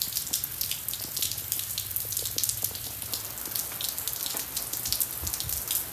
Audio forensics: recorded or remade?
recorded